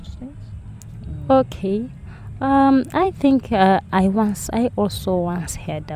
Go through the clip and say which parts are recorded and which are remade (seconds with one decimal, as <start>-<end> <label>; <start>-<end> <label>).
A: 0.0-0.6 remade; 0.6-2.3 recorded; 2.3-6.0 remade

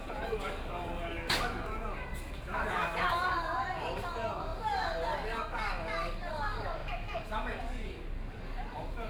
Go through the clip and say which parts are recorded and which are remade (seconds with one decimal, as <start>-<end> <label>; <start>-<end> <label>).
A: 0.0-9.1 remade